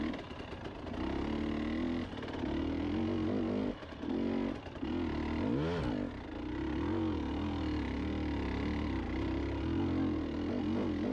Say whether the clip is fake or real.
real